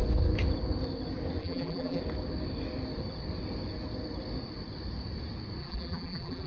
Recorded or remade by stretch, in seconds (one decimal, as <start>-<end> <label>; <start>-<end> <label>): 0.0-1.4 recorded; 1.4-2.0 remade; 2.0-5.6 recorded; 5.6-6.5 remade